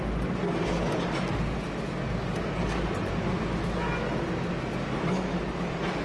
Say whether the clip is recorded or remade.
recorded